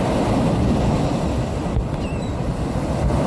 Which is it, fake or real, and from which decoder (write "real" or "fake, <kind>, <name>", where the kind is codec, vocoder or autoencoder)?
real